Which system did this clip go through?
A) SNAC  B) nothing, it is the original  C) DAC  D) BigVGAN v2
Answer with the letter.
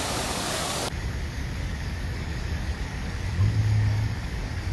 C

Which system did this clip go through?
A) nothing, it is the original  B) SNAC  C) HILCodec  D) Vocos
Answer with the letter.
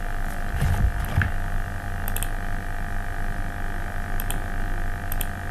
A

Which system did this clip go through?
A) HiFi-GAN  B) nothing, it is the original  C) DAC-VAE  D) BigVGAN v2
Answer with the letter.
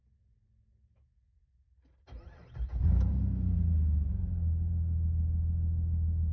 B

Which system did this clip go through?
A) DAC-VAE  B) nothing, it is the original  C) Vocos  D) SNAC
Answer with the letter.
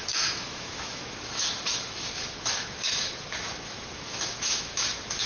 A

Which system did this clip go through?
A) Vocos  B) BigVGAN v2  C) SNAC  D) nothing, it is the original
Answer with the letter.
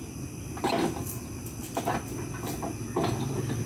D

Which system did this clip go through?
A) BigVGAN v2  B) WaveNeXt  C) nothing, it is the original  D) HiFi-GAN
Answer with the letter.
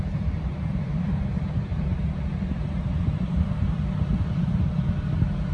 A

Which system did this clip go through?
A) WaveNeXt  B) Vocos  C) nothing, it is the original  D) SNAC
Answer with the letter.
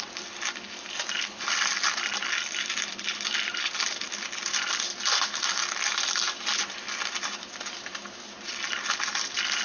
C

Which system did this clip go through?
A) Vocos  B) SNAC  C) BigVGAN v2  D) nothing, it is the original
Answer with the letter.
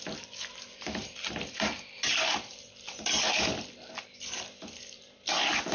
C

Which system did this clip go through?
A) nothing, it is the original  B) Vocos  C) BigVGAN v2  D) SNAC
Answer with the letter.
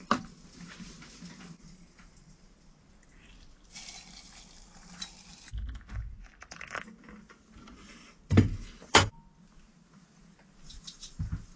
A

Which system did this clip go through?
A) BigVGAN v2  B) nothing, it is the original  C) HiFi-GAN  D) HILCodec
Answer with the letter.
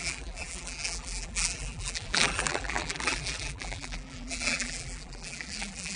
A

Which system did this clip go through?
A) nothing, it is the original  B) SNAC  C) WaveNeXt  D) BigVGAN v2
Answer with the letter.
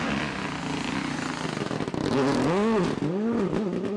A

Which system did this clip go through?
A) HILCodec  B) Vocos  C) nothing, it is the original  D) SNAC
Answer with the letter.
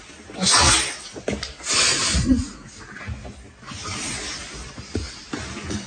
C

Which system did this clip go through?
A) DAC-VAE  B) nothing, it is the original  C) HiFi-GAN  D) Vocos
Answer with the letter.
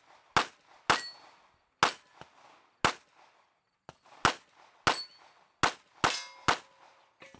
B